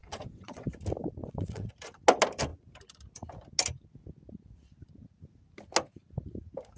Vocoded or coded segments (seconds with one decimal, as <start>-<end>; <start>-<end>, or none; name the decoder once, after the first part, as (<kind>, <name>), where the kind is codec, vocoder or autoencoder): 0.0-0.7 (vocoder, WaveNeXt); 1.2-1.7